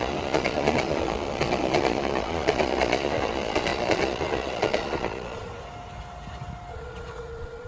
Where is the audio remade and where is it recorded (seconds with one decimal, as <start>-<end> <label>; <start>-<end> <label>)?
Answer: 0.0-5.5 remade; 5.5-6.7 recorded; 6.7-7.7 remade